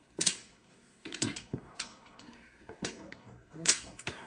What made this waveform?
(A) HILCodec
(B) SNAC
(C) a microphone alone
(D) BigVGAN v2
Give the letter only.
B